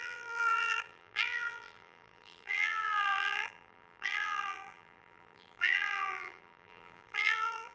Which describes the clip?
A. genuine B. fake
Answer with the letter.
B